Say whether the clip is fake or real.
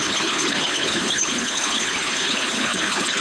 fake